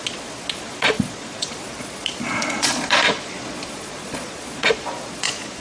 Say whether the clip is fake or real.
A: fake